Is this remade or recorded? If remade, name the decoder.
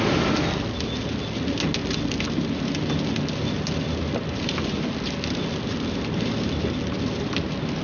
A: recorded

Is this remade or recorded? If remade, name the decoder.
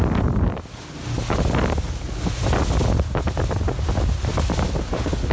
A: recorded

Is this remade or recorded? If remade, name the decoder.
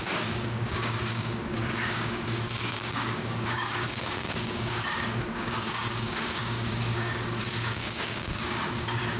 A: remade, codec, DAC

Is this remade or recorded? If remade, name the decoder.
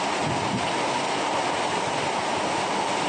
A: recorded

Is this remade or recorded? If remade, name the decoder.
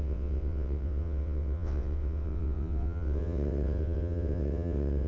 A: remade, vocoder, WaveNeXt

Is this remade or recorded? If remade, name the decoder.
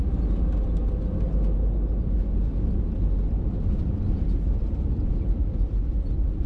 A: recorded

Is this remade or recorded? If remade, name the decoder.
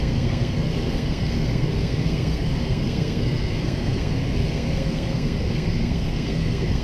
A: remade, codec, SNAC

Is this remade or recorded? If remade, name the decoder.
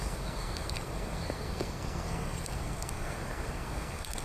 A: remade, codec, SNAC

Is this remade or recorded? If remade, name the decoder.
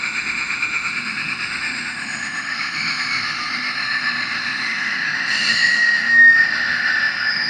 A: remade, autoencoder, DAC-VAE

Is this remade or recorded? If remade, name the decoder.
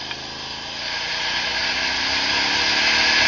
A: recorded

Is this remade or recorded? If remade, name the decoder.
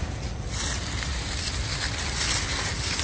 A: recorded